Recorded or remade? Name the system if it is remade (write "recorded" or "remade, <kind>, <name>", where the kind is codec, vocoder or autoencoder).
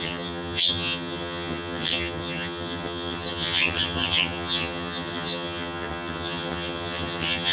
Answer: remade, vocoder, HiFi-GAN